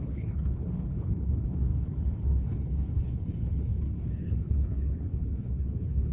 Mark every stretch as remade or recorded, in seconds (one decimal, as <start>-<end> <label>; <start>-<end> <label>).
0.0-6.1 remade